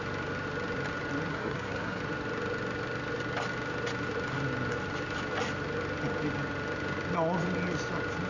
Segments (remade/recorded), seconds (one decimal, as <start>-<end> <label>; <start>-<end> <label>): 0.0-1.3 recorded; 1.3-2.0 remade; 2.0-8.3 recorded